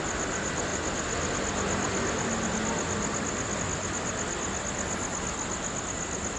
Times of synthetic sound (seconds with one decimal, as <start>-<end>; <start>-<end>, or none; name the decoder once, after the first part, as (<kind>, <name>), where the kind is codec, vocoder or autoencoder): none